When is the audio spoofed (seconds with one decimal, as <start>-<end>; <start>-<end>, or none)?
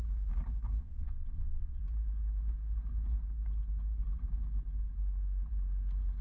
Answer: 0.8-1.8